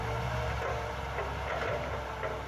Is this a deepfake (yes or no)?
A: no